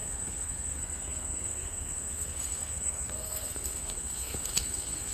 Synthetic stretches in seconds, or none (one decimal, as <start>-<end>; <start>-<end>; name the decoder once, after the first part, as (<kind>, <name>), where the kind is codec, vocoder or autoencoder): 0.0-5.1 (codec, SNAC)